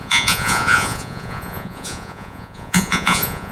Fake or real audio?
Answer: fake